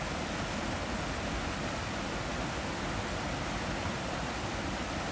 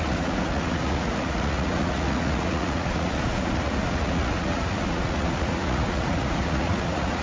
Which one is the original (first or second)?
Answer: first